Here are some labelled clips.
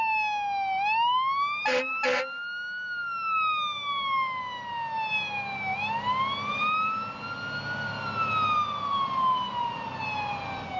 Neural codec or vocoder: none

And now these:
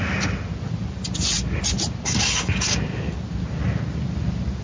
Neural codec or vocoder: none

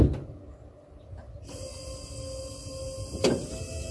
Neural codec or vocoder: none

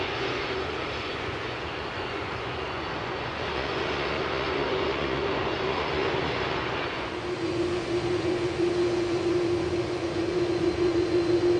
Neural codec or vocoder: vocoder, Vocos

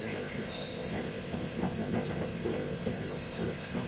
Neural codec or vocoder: codec, ZipCodec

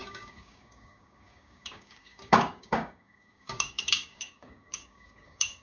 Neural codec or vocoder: codec, DAC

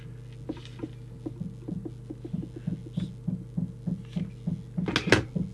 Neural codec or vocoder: none